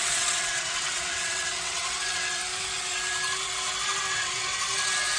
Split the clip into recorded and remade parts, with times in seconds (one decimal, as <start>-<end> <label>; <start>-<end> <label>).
0.0-2.4 remade; 2.4-4.1 recorded; 4.1-4.5 remade; 4.5-5.2 recorded